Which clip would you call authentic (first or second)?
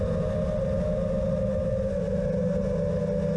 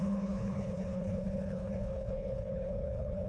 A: first